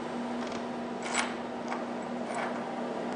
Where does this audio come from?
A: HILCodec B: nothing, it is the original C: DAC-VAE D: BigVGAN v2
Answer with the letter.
B